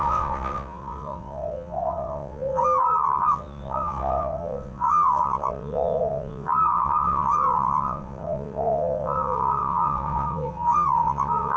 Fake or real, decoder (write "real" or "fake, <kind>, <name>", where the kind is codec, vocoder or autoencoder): fake, vocoder, WaveNeXt